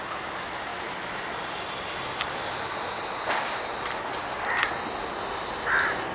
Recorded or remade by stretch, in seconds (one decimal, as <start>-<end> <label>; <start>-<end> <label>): 0.0-6.1 recorded